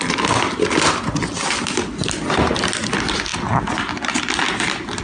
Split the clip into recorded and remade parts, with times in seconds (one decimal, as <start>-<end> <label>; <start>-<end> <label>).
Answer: 0.0-5.0 recorded